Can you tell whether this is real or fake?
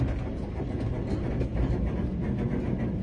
real